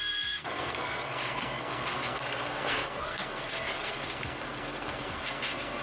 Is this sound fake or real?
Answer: fake